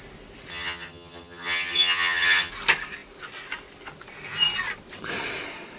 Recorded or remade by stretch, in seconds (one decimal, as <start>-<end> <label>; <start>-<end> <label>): 0.0-0.5 recorded; 0.5-2.5 remade; 2.5-5.8 recorded

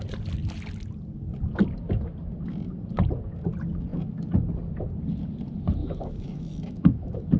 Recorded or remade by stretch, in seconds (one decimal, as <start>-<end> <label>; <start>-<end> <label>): 0.0-5.8 recorded; 5.8-7.4 remade

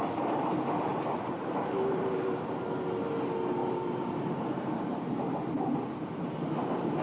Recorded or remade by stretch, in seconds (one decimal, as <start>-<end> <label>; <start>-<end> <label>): 0.0-0.9 recorded; 0.9-2.6 remade; 2.6-3.6 recorded; 3.6-4.7 remade; 4.7-7.0 recorded

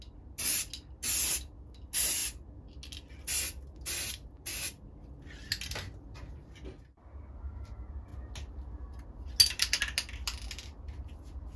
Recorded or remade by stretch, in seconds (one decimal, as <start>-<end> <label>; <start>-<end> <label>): 0.0-11.6 recorded

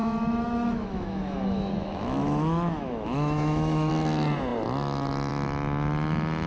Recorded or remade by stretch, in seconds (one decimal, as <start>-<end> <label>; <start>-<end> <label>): 0.0-3.9 remade; 3.9-6.5 recorded

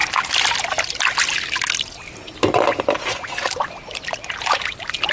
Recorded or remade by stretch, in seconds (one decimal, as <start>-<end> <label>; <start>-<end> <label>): 0.0-5.1 recorded